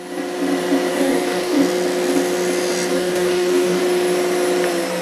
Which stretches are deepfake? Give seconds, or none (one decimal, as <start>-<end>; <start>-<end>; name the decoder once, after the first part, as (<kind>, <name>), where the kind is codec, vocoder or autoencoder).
0.9-1.6 (codec, DAC); 2.9-3.8